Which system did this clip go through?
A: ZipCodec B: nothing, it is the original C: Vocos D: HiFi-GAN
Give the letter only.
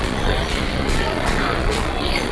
C